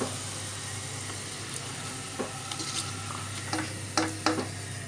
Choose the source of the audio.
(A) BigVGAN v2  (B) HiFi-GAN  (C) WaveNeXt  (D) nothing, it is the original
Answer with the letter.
D